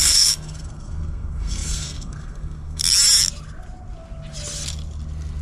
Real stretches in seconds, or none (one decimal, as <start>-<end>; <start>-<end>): 2.8-5.4